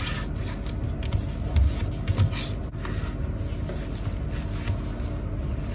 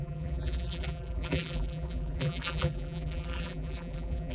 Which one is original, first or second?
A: first